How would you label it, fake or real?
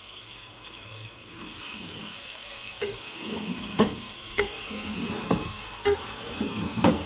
fake